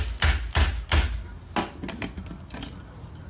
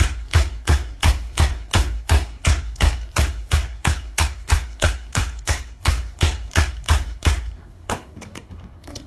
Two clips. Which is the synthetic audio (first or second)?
second